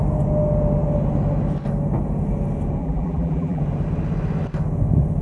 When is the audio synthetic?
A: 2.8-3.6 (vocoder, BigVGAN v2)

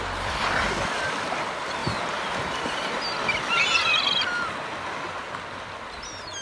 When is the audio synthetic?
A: 1.8-3.0 (vocoder, BigVGAN v2)

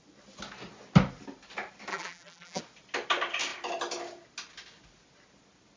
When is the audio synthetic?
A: 1.9-2.6 (vocoder, BigVGAN v2)